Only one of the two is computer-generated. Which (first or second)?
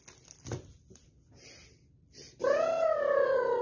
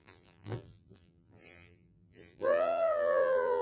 second